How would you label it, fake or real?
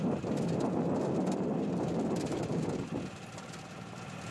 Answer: real